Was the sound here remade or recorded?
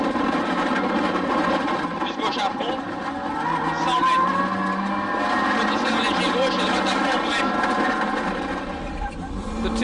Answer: recorded